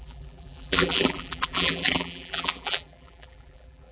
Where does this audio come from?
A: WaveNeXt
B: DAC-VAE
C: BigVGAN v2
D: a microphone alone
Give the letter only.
C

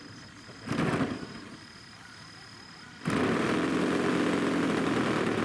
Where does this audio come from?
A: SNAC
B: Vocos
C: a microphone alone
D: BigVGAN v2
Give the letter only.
C